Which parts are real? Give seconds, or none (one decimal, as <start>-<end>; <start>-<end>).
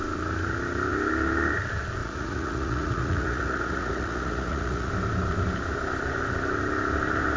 0.0-2.0; 4.9-7.4